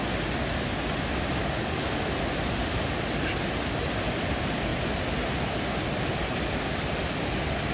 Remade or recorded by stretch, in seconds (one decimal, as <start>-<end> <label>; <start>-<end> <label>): 0.0-1.4 recorded; 1.4-2.0 remade; 2.0-7.7 recorded